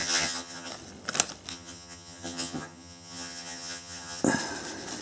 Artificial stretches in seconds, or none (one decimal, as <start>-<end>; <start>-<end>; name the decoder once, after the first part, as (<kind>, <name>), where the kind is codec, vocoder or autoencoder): 0.0-0.7 (vocoder, HiFi-GAN); 1.5-4.2